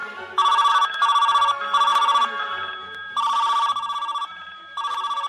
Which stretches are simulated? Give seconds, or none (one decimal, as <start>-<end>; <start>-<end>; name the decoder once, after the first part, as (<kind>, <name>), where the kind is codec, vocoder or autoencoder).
0.0-0.7 (vocoder, BigVGAN v2); 1.9-5.3